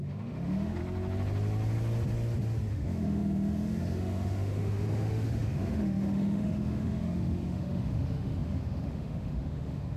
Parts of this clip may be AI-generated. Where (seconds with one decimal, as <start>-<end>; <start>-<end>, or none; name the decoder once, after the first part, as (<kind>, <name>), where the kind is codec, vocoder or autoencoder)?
0.0-0.8 (autoencoder, DAC-VAE); 2.7-10.0